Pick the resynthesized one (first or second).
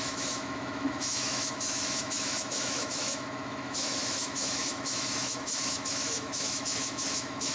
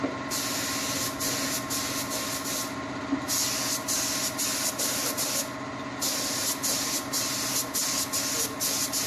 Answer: first